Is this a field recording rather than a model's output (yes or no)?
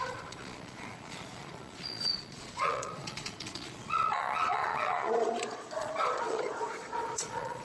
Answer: no